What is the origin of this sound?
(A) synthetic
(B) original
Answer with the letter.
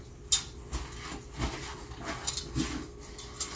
B